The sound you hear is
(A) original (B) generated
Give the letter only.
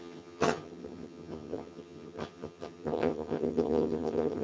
B